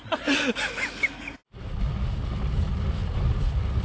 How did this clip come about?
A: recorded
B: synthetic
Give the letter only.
A